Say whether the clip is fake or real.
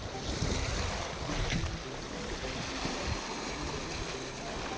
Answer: real